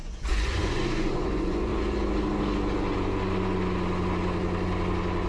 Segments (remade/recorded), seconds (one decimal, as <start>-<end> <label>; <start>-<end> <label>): 0.0-1.7 remade; 1.7-5.3 recorded